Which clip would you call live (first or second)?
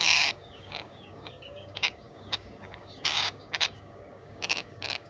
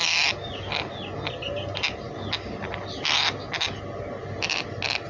second